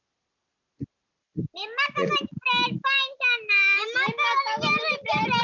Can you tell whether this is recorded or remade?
recorded